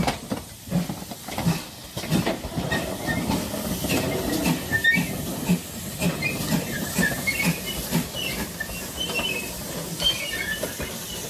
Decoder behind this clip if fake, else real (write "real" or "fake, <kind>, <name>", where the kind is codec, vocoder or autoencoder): real